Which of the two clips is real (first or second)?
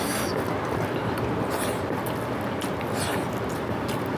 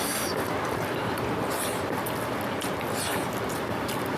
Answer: first